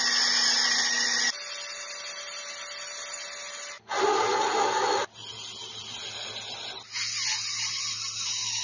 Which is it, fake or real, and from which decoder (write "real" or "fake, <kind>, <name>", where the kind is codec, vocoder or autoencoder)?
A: real